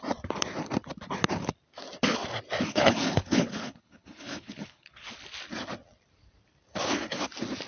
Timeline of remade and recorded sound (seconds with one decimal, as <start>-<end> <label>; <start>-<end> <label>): 0.0-2.7 recorded; 2.7-5.1 remade; 5.1-7.7 recorded